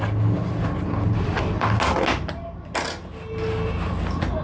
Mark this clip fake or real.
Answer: real